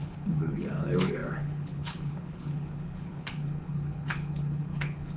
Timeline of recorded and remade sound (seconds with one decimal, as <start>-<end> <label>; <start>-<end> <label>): 0.0-5.2 remade